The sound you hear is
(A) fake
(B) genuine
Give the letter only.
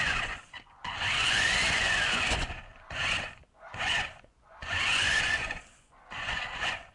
A